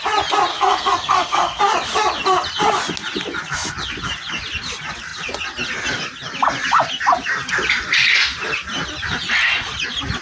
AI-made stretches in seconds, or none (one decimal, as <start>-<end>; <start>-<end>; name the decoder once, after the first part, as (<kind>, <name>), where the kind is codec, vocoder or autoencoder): 0.5-1.6 (codec, SNAC)